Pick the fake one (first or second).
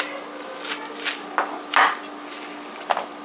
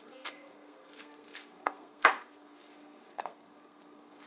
second